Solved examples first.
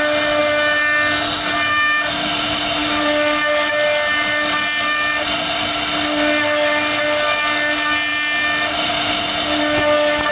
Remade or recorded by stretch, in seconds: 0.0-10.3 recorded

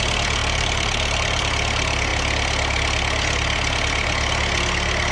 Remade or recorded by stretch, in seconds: 0.0-0.4 recorded; 0.4-1.5 remade; 1.5-5.1 recorded

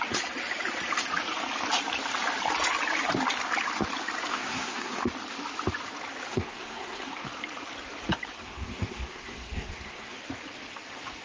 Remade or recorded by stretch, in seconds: 0.0-4.3 recorded; 4.3-5.0 remade; 5.0-6.3 recorded; 6.3-7.1 remade; 7.1-8.4 recorded; 8.4-10.2 remade; 10.2-11.2 recorded

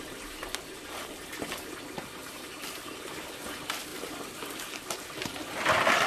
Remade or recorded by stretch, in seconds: 0.0-6.1 recorded

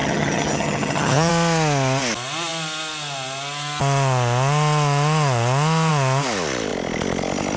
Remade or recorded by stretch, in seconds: 0.0-1.3 remade; 1.3-7.6 recorded

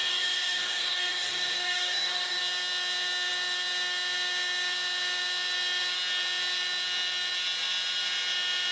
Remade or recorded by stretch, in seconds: 0.0-2.4 remade; 2.4-8.7 recorded